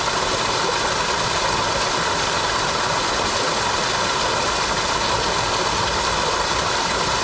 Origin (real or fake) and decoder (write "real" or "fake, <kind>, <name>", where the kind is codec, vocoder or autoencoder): real